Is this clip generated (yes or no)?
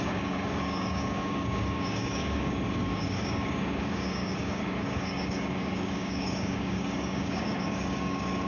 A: yes